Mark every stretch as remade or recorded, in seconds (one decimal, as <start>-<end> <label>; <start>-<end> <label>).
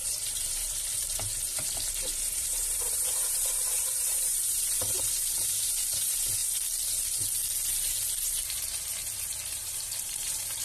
0.0-6.4 remade; 6.4-9.6 recorded; 9.6-10.6 remade